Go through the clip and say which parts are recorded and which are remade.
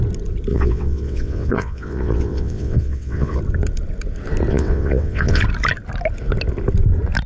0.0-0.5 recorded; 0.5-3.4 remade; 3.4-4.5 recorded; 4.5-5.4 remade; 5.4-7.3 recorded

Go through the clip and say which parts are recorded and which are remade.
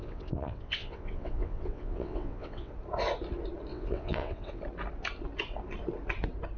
0.0-2.7 remade; 2.7-3.7 recorded; 3.7-4.6 remade; 4.6-6.6 recorded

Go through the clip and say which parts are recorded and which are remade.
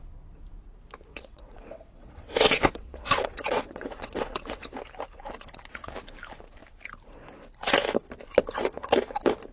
0.0-1.1 recorded; 1.1-4.7 remade; 4.7-9.5 recorded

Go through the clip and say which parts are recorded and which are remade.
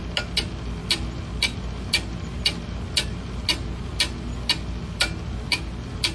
0.0-6.1 recorded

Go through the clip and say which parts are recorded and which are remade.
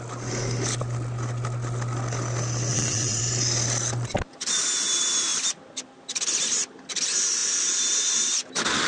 0.0-2.7 recorded; 2.7-3.2 remade; 3.2-8.9 recorded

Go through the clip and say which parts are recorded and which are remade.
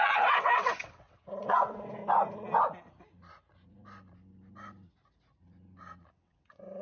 0.0-2.0 remade; 2.0-6.1 recorded; 6.1-6.8 remade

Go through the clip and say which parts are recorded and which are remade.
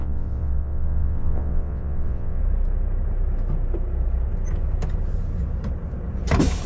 0.0-2.4 remade; 2.4-6.7 recorded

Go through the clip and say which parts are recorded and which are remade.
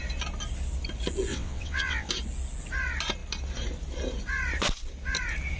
0.0-1.3 recorded; 1.3-2.1 remade; 2.1-5.6 recorded